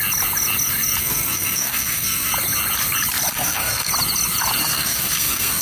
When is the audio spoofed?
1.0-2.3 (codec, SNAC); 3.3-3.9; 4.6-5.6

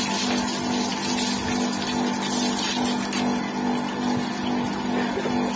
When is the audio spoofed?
none

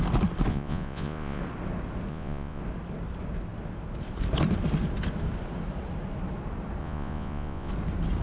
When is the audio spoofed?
0.5-1.4 (vocoder, Vocos); 2.1-2.6; 6.8-7.7

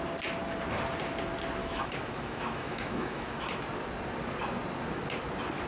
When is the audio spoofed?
1.6-3.6 (autoencoder, DAC-VAE)

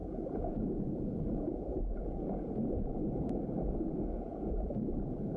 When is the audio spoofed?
0.0-2.5 (vocoder, Vocos); 4.3-4.9